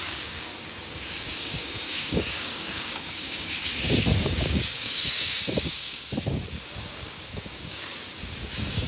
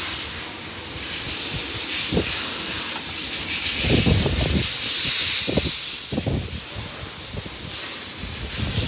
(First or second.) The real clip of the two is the second